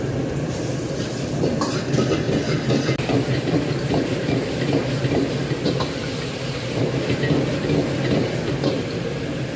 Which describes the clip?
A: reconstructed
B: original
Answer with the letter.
A